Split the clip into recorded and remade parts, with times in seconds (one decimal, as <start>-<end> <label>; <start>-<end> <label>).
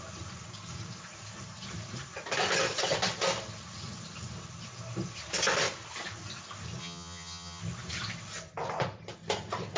0.0-6.8 recorded; 6.8-7.6 remade; 7.6-9.8 recorded